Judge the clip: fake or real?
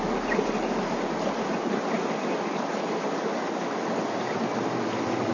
real